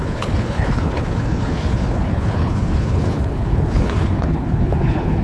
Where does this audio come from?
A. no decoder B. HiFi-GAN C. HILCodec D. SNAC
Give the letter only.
C